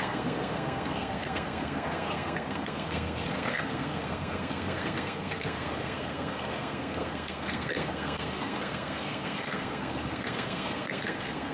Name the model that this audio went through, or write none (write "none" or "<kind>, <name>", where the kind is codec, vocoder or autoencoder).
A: codec, SNAC